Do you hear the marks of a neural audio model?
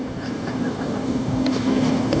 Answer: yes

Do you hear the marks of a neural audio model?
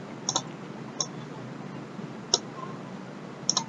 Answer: no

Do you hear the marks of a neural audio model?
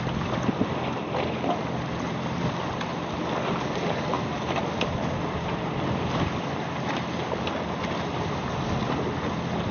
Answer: yes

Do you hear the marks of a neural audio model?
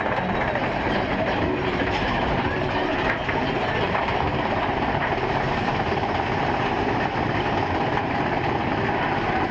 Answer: yes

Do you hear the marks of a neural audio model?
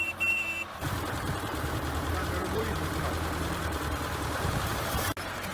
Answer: yes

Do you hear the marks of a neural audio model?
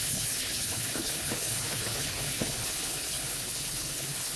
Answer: yes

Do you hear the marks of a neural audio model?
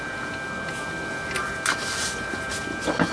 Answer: no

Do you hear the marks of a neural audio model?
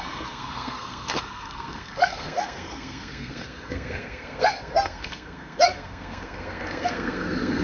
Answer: yes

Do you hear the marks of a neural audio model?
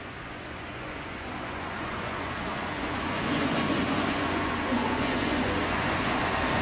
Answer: yes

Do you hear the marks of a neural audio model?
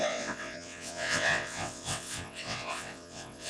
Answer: yes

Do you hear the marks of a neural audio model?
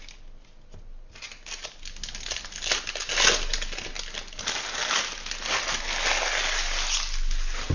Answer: no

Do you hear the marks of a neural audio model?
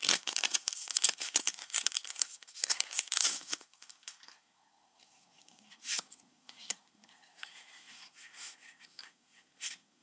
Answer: yes